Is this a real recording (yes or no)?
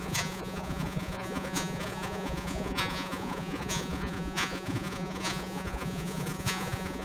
no